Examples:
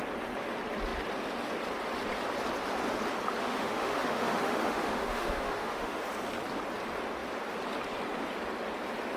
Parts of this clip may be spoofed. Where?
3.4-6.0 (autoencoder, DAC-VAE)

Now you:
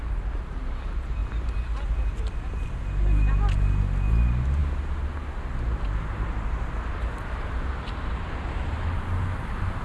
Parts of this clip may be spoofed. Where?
none

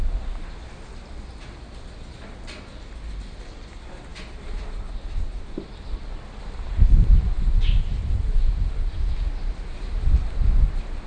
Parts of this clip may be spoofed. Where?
none

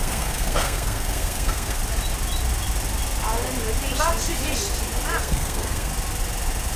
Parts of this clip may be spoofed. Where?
0.0-1.8 (codec, SNAC); 5.2-5.9

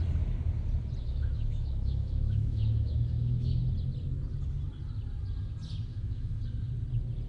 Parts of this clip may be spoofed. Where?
1.0-3.6 (autoencoder, DAC-VAE); 5.9-6.4

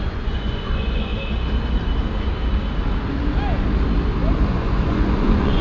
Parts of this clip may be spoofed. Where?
0.0-1.1 (vocoder, Vocos); 4.5-5.6

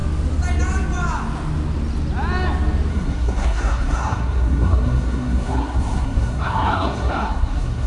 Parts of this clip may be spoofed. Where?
2.9-7.9 (codec, SNAC)

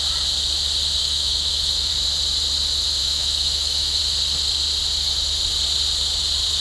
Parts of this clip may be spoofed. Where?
1.0-1.9 (autoencoder, DAC-VAE); 3.0-4.0